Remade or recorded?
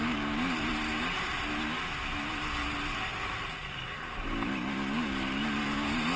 recorded